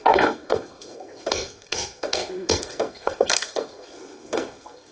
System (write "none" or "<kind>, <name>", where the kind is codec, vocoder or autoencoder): codec, SNAC